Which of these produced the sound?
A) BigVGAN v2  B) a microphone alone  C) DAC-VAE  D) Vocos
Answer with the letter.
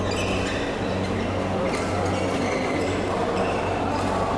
B